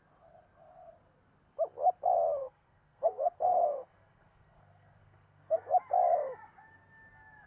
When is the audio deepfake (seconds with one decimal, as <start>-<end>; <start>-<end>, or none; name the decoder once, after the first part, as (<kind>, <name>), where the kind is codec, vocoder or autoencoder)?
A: 2.4-5.7 (codec, SNAC)